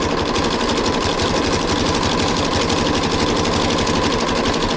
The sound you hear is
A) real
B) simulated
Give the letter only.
A